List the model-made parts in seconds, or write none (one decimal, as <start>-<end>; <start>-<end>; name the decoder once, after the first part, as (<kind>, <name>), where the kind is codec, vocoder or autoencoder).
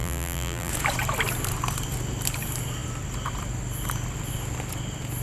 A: 0.0-0.7 (vocoder, BigVGAN v2)